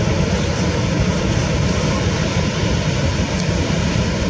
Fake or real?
real